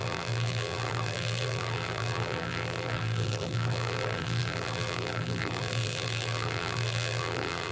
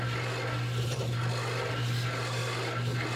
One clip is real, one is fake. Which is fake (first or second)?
first